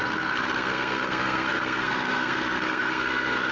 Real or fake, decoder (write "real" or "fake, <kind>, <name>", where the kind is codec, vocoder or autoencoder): fake, codec, SNAC